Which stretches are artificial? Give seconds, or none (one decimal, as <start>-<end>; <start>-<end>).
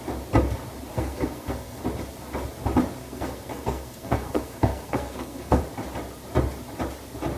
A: 0.9-1.8; 3.0-5.6